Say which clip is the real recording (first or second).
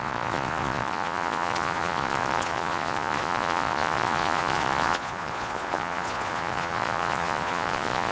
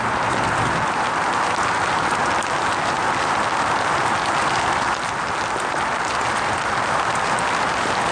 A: second